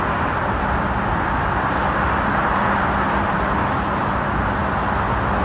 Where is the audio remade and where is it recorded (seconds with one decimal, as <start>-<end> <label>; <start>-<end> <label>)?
0.0-5.4 recorded